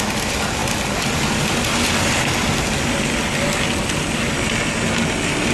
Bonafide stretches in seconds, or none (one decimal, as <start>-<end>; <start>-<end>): 0.0-5.5